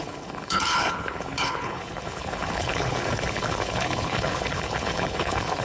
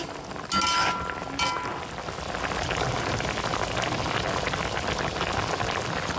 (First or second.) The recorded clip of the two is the second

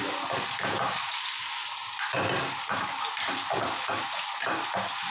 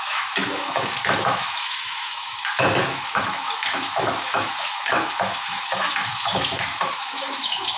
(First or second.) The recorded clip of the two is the first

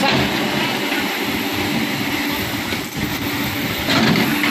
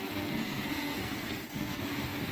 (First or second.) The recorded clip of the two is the first